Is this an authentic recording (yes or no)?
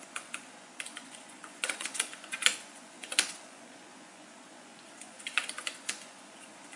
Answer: no